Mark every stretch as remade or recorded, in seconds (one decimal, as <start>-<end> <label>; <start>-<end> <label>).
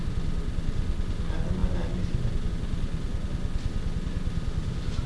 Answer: 0.0-5.1 recorded